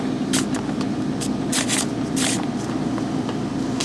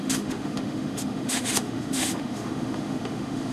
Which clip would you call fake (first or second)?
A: second